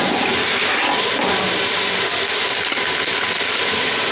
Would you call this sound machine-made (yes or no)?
no